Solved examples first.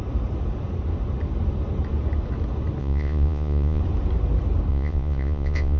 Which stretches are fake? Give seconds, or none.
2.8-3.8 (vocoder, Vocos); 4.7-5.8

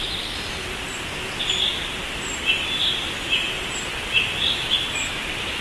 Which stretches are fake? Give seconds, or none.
none

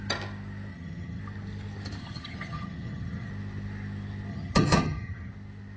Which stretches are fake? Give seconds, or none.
0.7-1.2 (vocoder, HiFi-GAN); 2.0-3.3; 4.3-5.3

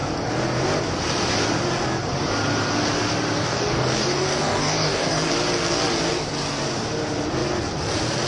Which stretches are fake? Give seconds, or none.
3.4-5.3 (codec, DAC)

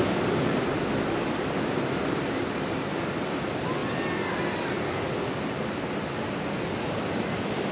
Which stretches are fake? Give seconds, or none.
none

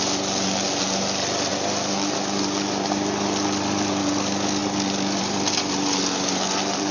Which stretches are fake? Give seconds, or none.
none